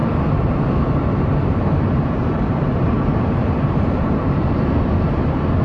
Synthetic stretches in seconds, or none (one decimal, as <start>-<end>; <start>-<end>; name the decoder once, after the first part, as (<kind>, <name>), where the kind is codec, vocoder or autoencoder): 2.2-5.6 (vocoder, BigVGAN v2)